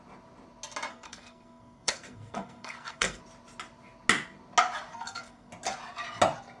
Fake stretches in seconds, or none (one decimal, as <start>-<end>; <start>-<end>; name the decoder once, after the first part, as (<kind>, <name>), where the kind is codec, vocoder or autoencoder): 0.9-3.2 (codec, SNAC); 4.9-5.5